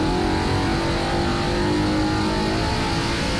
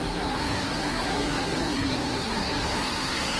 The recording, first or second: first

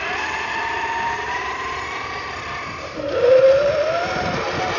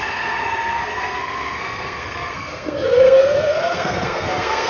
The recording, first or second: first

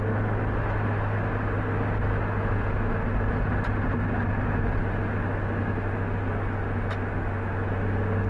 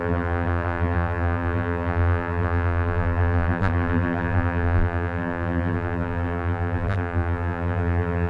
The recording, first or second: first